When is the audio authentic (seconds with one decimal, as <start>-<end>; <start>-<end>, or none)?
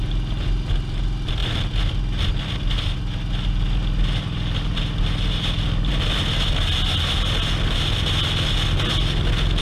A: 0.0-9.6